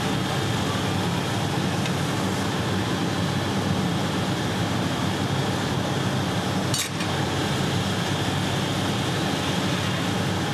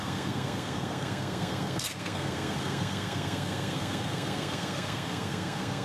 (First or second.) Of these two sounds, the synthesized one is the second